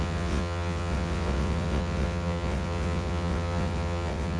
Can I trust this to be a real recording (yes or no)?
no